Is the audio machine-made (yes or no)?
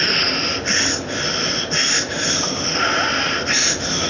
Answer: no